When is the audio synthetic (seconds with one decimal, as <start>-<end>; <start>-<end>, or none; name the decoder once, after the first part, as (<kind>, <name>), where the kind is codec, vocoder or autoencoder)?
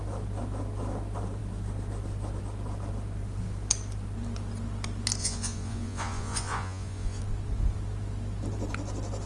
5.2-7.2 (vocoder, Vocos)